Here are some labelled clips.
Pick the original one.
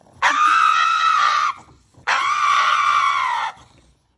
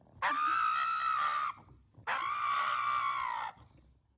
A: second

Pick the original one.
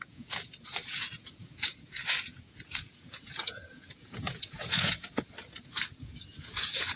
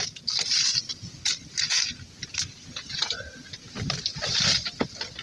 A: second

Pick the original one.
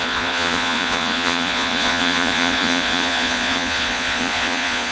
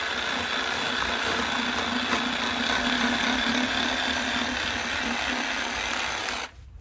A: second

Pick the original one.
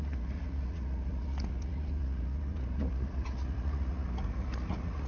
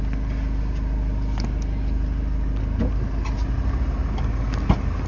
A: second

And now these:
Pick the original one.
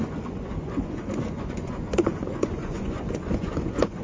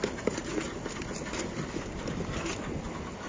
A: second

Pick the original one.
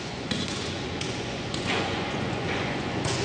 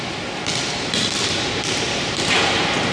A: second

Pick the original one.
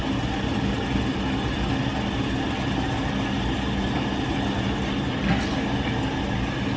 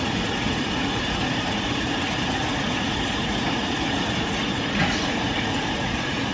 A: first